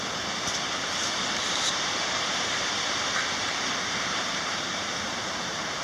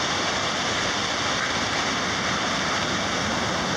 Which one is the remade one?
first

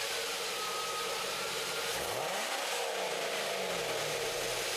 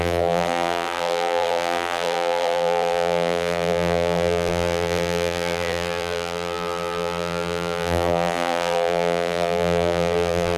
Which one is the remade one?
second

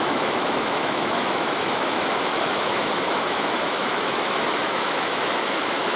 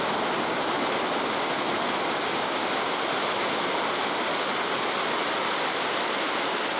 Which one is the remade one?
first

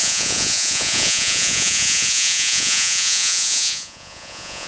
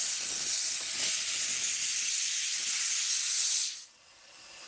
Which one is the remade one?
first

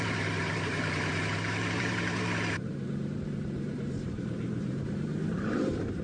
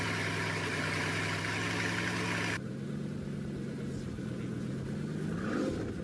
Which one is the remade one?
first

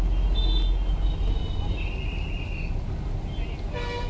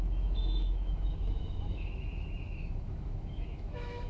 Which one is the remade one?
second